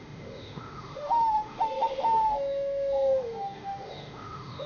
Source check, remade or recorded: remade